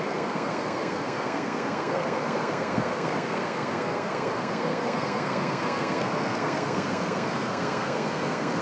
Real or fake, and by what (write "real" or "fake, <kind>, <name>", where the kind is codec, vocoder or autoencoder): fake, codec, SNAC